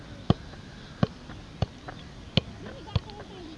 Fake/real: real